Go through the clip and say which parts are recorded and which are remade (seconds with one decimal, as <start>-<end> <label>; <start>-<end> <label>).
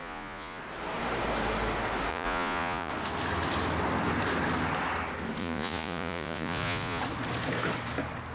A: 0.0-0.6 remade; 0.6-2.1 recorded; 2.1-2.9 remade; 2.9-5.4 recorded; 5.4-7.0 remade; 7.0-8.3 recorded